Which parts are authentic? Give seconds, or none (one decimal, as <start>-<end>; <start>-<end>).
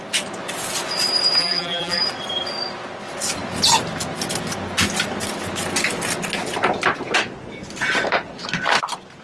0.0-1.4; 2.0-9.2